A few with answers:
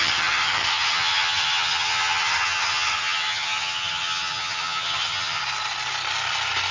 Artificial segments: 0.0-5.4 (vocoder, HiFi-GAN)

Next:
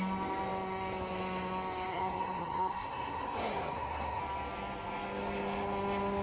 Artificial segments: 1.9-4.2 (codec, SNAC)

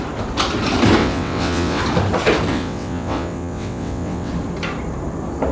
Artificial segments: 1.0-1.8 (vocoder, WaveNeXt); 2.5-4.3

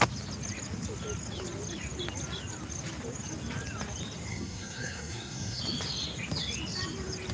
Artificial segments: 4.3-5.6 (codec, SNAC)

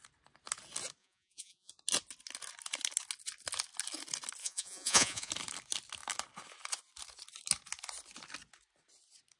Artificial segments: 1.0-1.7 (vocoder, Vocos); 4.4-5.3

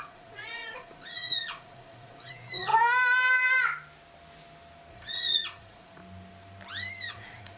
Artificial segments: 0.0-2.7 (vocoder, Vocos); 4.9-6.0; 7.1-7.6

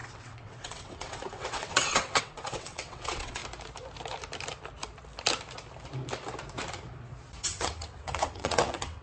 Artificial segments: 0.0-3.4 (vocoder, WaveNeXt); 7.4-9.0

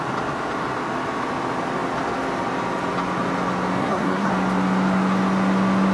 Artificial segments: 3.8-4.3 (codec, SNAC)